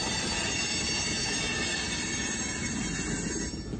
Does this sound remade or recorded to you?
recorded